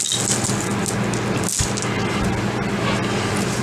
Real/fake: real